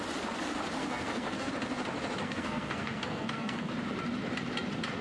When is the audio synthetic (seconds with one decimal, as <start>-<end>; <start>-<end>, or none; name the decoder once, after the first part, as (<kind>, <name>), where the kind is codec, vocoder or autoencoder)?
0.8-1.5 (codec, SNAC); 2.2-3.7